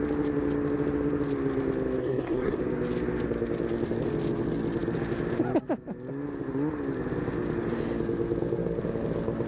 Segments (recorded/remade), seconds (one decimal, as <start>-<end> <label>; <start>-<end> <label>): 0.0-2.0 recorded; 2.0-2.6 remade; 2.6-9.5 recorded